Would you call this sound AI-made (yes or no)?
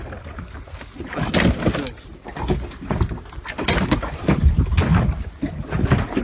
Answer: no